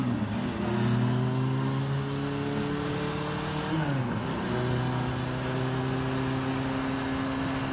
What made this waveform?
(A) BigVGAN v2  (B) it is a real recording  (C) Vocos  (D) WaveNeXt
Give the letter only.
B